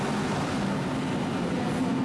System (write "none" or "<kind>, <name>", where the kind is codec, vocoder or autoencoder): none